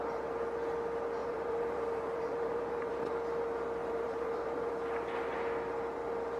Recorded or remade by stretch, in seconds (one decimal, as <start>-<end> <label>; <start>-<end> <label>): 0.0-1.2 recorded; 1.2-3.1 remade; 3.1-3.8 recorded; 3.8-4.7 remade; 4.7-6.4 recorded